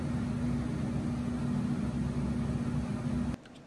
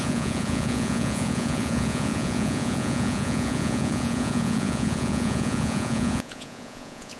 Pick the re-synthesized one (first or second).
second